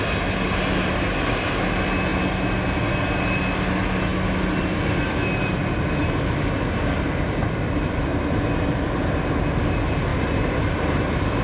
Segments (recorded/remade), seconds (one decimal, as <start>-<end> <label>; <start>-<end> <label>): 0.0-6.0 recorded; 6.0-9.2 remade; 9.2-10.1 recorded; 10.1-11.4 remade

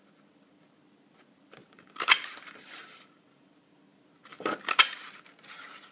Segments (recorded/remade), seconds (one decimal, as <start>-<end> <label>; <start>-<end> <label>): 0.0-1.6 recorded; 1.6-3.5 remade; 3.5-4.3 recorded; 4.3-4.8 remade; 4.8-5.9 recorded

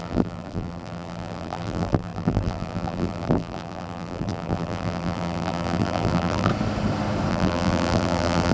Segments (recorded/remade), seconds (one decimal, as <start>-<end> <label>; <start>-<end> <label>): 0.0-6.5 remade; 6.5-7.3 recorded; 7.3-8.5 remade

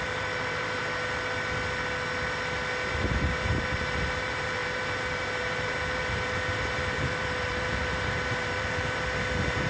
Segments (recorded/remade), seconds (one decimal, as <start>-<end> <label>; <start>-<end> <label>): 0.0-0.8 remade; 0.8-2.9 recorded; 2.9-9.7 remade